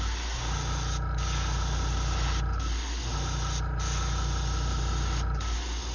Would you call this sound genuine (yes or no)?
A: yes